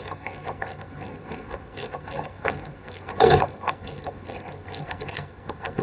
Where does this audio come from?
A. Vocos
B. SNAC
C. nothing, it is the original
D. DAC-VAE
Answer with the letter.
B